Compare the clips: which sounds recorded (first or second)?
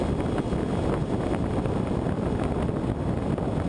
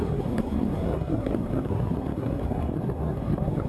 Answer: first